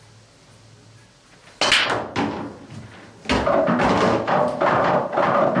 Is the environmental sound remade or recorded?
recorded